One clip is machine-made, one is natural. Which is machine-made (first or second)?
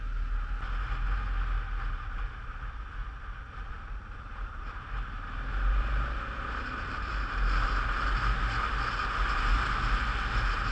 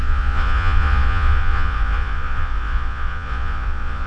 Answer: second